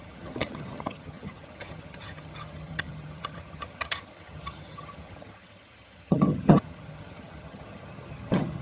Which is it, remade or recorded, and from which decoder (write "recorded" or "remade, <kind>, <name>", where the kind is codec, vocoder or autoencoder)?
remade, vocoder, HiFi-GAN